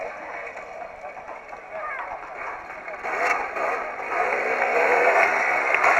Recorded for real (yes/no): yes